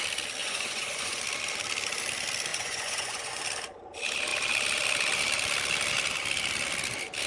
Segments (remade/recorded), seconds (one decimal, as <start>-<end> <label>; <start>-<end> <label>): 0.0-0.4 recorded; 0.4-1.2 remade; 1.2-2.5 recorded; 2.5-3.4 remade; 3.4-7.3 recorded